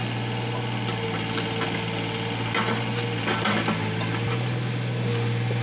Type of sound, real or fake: real